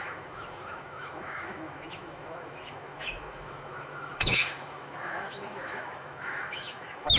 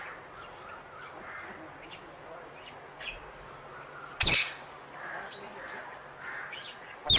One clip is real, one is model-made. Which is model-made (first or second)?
first